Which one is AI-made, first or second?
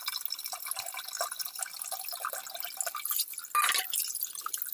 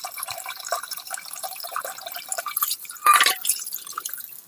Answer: second